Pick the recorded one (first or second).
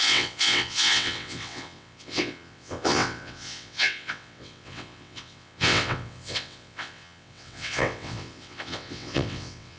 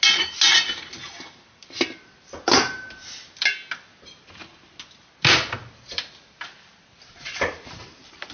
second